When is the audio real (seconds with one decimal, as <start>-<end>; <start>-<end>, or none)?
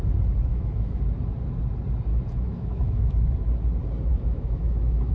0.0-0.5; 1.0-2.1; 3.3-4.1